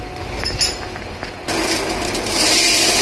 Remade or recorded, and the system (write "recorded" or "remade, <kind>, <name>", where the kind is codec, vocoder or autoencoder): recorded